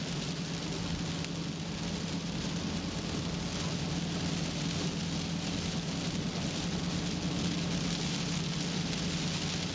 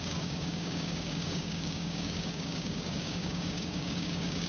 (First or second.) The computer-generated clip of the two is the second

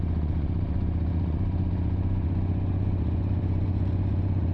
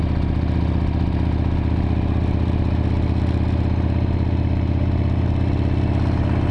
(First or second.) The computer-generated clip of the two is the first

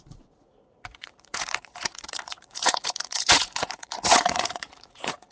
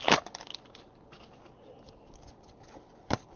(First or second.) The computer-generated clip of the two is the first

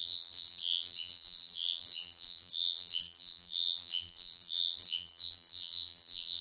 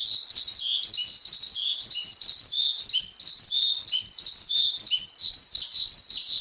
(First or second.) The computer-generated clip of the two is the first